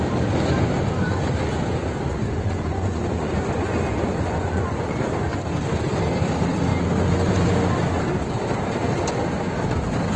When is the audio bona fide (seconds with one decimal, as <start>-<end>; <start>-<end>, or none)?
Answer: 0.0-2.1; 3.3-4.0; 5.1-10.2